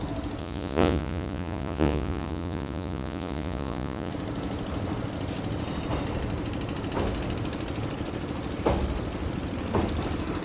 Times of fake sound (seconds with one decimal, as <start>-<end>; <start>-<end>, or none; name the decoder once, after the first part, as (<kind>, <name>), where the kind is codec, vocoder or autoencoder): 0.4-4.1 (vocoder, Vocos)